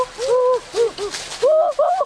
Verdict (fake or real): real